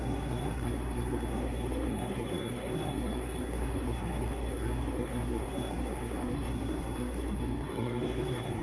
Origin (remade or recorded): remade